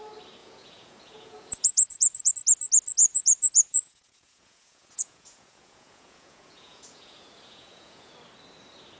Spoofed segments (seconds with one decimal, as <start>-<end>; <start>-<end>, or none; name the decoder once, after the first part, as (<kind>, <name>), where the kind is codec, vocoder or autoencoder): 0.4-2.3 (vocoder, Vocos); 3.0-8.1